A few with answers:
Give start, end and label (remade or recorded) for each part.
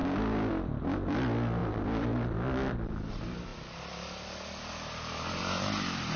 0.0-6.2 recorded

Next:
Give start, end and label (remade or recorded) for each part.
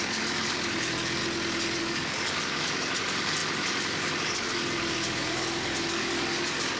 0.0-1.2 remade; 1.2-1.8 recorded; 1.8-6.8 remade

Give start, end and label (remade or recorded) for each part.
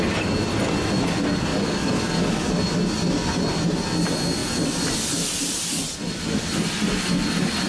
0.0-1.5 recorded; 1.5-2.5 remade; 2.5-7.7 recorded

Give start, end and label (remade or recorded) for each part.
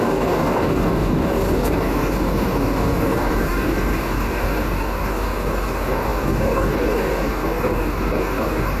0.0-8.8 remade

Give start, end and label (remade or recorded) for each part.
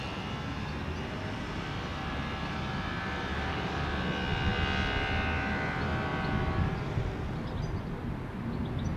0.0-3.3 recorded; 3.3-3.8 remade; 3.8-9.0 recorded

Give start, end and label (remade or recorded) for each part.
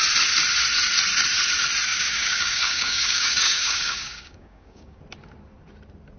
0.0-1.9 recorded; 1.9-5.0 remade; 5.0-6.2 recorded